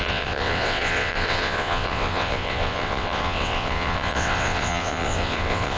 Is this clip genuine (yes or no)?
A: no